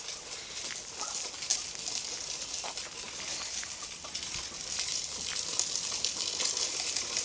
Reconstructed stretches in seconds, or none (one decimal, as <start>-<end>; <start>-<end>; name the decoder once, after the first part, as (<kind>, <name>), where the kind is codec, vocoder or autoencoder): none